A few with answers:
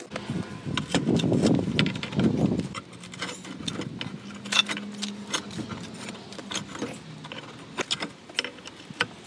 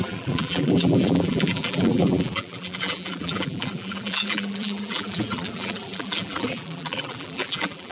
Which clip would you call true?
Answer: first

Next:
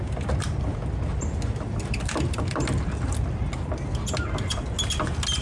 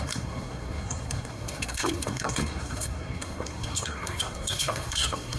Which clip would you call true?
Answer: first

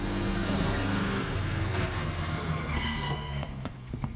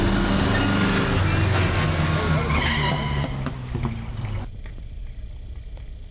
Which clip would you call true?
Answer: second